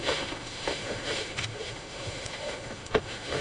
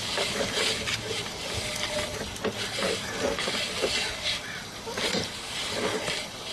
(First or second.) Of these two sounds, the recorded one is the second